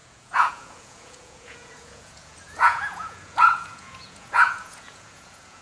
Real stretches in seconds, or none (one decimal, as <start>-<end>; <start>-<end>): none